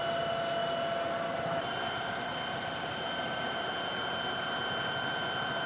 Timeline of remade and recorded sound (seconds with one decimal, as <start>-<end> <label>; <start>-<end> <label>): 0.0-5.7 recorded

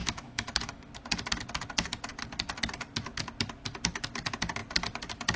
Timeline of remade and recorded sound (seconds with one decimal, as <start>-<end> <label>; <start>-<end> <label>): 0.0-0.9 remade; 0.9-5.4 recorded

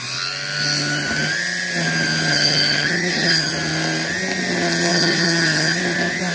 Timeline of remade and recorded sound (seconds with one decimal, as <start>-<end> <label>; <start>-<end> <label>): 0.0-2.3 recorded; 2.3-3.5 remade; 3.5-4.9 recorded; 4.9-5.8 remade; 5.8-6.3 recorded

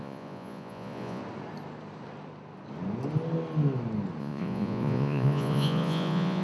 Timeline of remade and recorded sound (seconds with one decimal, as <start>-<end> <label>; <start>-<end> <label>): 0.0-1.2 remade; 1.2-4.2 recorded; 4.2-6.4 remade

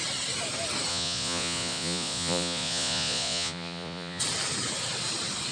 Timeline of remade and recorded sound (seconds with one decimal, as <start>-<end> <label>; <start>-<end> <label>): 0.0-0.9 recorded; 0.9-4.2 remade; 4.2-5.5 recorded